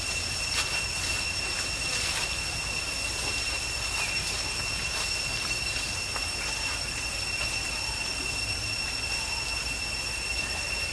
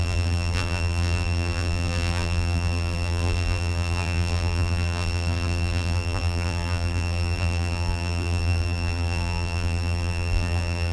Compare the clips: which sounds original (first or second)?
first